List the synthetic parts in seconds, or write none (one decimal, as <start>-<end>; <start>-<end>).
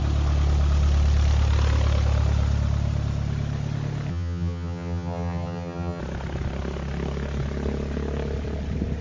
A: 4.1-6.0